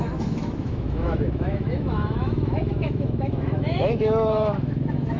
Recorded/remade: remade